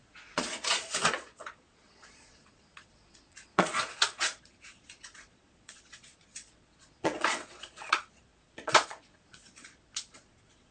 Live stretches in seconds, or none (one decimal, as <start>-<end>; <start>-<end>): none